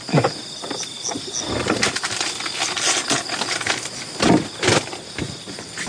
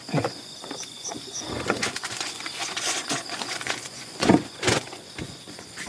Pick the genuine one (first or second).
first